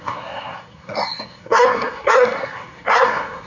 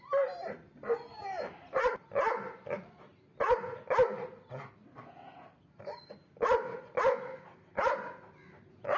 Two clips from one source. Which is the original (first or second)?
second